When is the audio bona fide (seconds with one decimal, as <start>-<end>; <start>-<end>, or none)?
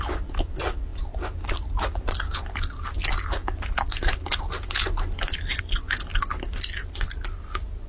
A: 0.0-7.9